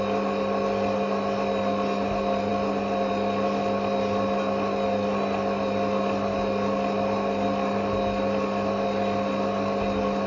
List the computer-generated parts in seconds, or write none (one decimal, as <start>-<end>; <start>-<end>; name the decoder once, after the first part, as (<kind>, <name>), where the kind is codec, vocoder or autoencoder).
none